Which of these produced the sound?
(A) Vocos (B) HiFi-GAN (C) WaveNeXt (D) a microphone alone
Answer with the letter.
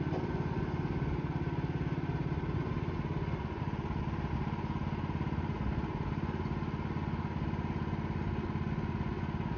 D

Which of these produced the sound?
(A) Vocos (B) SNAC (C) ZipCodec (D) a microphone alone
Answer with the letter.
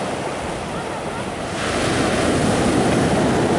D